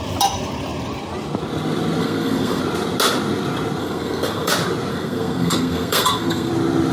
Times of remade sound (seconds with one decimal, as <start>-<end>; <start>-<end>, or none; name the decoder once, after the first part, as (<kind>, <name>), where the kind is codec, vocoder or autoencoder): 2.0-2.6 (codec, SNAC); 3.8-4.5; 4.9-6.5